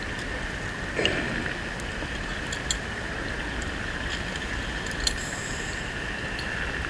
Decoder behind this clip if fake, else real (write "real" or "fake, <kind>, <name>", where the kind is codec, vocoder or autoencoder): real